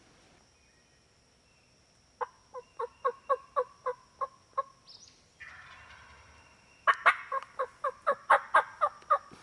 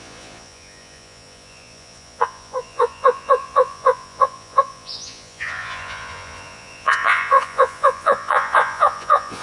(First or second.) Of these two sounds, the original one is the first